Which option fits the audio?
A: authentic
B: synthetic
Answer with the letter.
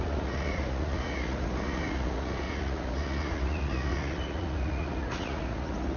B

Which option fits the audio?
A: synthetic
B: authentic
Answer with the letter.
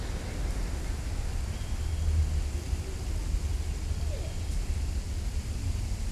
B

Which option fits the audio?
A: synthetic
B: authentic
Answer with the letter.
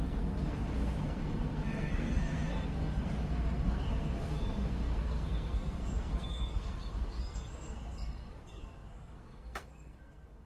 A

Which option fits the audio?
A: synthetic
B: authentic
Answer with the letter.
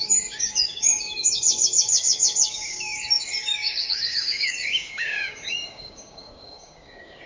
A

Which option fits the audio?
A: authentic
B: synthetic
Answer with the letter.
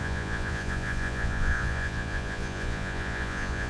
B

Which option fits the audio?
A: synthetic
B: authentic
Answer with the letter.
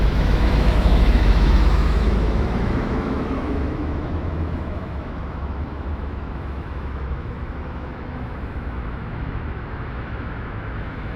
A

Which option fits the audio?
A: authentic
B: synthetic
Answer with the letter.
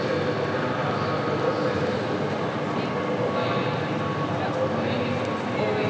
A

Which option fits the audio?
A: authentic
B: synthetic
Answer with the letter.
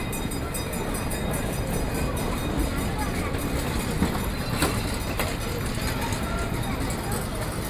A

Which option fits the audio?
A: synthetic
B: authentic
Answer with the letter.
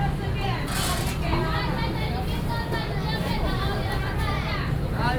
B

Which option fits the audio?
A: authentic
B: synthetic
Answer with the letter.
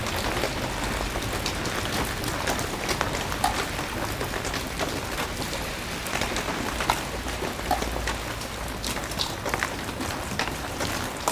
A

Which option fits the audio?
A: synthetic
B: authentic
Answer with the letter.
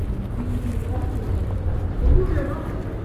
B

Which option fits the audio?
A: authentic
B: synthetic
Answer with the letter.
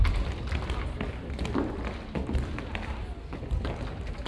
A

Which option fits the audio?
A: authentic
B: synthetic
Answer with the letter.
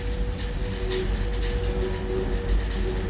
A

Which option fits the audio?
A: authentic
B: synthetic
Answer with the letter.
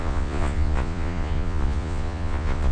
B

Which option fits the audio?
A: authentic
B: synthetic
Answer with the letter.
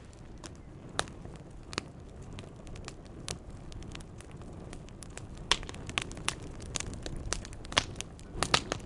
A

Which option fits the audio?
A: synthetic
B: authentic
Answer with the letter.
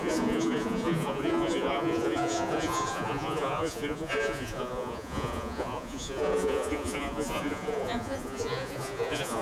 A